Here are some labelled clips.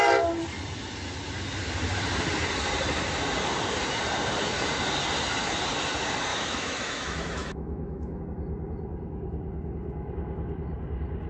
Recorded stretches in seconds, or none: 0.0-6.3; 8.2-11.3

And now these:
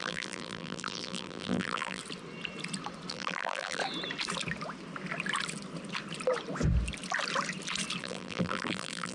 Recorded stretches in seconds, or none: 2.0-3.1; 3.8-8.0